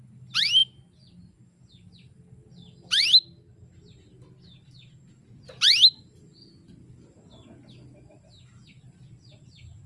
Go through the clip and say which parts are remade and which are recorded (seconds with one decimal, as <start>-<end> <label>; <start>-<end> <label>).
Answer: 0.0-9.9 recorded